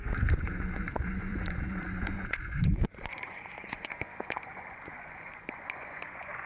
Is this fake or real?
fake